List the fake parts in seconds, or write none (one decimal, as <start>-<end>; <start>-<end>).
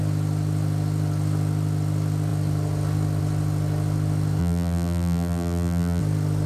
4.4-6.0